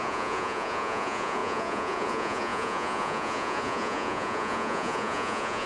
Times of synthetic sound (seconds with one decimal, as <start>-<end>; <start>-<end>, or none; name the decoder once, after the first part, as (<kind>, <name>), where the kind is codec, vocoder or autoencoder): 0.0-5.7 (vocoder, Vocos)